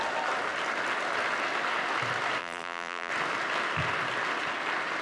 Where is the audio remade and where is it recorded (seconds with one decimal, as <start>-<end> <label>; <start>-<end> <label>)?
0.0-2.4 recorded; 2.4-3.1 remade; 3.1-5.0 recorded